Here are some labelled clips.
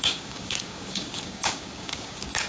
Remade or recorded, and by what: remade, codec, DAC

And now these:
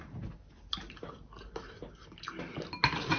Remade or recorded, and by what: recorded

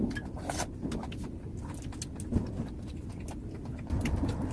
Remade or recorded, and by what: recorded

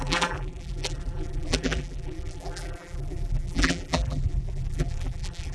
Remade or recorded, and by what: remade, vocoder, BigVGAN v2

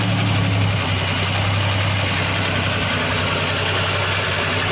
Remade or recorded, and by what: recorded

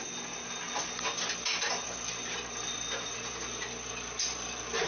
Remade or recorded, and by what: recorded